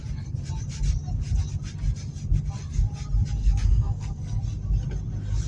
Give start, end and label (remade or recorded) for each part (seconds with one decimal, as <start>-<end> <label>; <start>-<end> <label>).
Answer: 0.0-3.4 recorded; 3.4-4.4 remade; 4.4-5.5 recorded